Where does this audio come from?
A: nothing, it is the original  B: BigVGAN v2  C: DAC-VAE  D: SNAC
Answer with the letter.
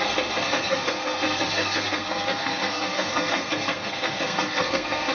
D